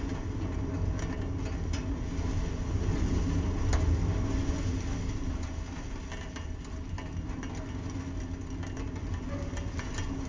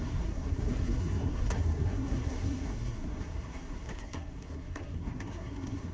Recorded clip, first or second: first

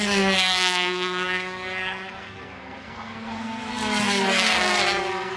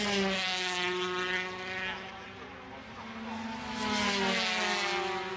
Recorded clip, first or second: second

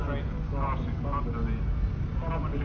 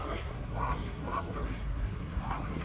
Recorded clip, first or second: first